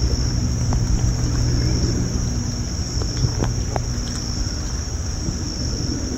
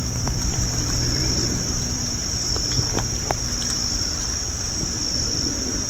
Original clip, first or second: first